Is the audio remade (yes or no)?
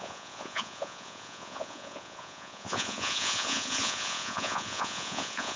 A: yes